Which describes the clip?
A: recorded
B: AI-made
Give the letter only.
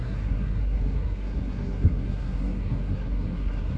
B